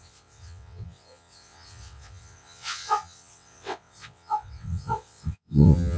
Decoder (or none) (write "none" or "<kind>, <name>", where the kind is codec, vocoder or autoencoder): vocoder, WaveNeXt